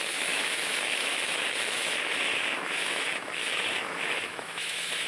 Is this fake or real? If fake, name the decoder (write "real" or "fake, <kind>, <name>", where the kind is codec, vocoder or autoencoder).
fake, autoencoder, DAC-VAE